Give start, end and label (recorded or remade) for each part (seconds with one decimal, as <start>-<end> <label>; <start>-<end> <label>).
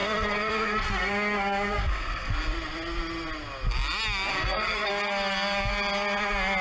0.0-2.3 remade; 2.3-4.3 recorded; 4.3-4.9 remade; 4.9-6.6 recorded